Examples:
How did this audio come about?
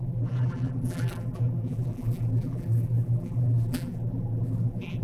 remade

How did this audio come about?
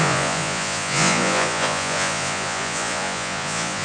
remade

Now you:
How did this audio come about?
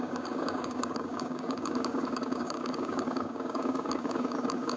remade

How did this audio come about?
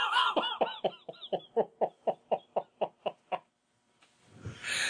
remade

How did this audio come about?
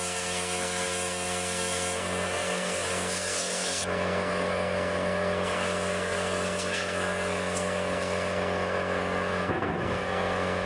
remade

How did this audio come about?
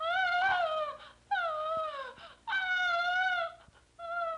recorded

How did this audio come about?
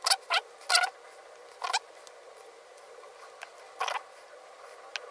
recorded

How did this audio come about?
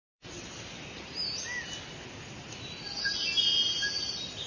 recorded